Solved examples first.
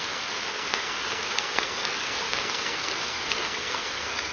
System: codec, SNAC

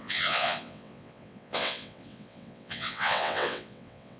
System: vocoder, WaveNeXt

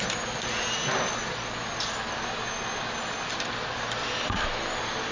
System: none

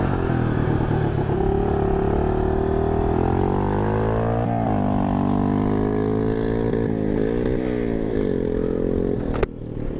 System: none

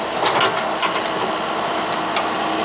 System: none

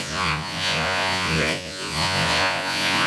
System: vocoder, Vocos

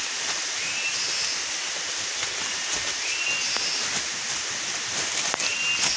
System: none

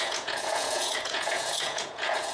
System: vocoder, Vocos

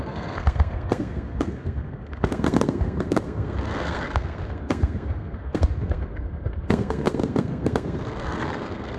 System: codec, SNAC